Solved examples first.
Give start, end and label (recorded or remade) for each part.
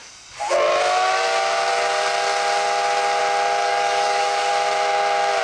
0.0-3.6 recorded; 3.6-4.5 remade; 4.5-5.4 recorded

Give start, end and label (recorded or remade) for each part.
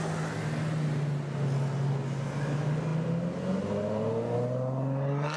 0.0-5.4 recorded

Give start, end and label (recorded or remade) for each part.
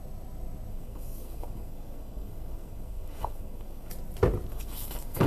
0.0-0.7 recorded; 0.7-3.9 remade; 3.9-4.5 recorded; 4.5-5.3 remade